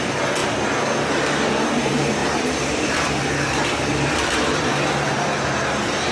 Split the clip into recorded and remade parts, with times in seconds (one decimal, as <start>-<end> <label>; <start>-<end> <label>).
0.0-0.4 remade; 0.4-1.1 recorded; 1.1-6.1 remade